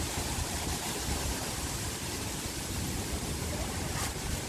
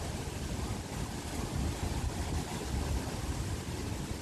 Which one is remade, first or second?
first